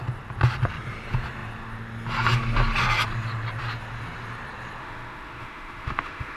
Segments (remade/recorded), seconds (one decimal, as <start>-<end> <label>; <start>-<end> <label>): 0.0-4.8 recorded; 4.8-6.4 remade